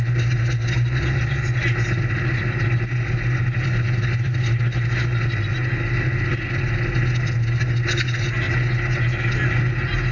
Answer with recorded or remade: recorded